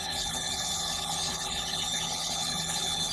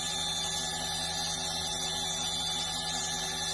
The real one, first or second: second